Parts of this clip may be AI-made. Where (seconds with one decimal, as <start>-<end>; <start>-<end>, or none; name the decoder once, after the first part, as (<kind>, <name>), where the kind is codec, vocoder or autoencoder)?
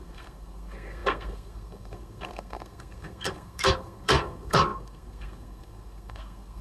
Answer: 0.0-6.6 (codec, SNAC)